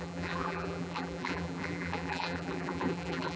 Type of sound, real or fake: fake